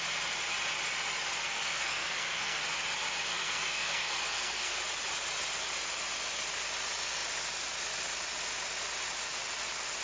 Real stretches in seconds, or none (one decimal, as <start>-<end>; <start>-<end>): 0.0-1.3; 2.6-3.3; 4.8-10.0